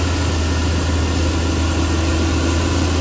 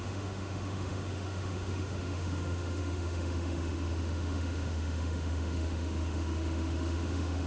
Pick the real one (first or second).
first